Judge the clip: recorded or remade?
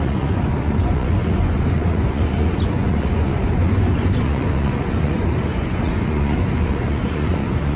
remade